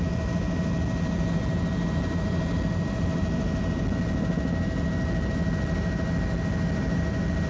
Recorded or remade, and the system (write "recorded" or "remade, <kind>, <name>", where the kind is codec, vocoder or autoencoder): recorded